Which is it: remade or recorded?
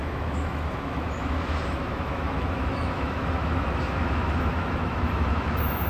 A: remade